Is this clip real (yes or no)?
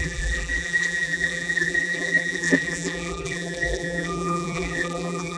no